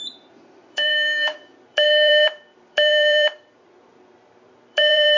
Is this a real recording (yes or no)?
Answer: no